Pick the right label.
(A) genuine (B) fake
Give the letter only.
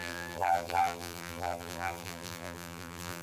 B